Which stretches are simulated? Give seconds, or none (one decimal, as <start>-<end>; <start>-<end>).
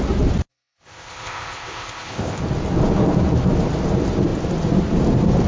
0.5-2.4